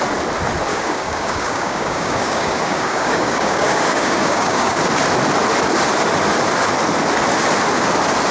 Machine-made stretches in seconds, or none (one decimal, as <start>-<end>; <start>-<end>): 0.7-4.8